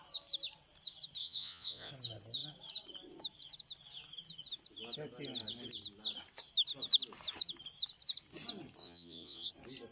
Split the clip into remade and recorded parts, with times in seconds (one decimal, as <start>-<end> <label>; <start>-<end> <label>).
0.0-1.2 recorded; 1.2-1.9 remade; 1.9-8.8 recorded; 8.8-9.5 remade; 9.5-9.9 recorded